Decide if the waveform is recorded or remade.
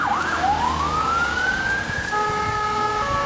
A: remade